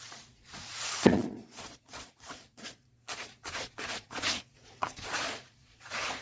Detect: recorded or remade remade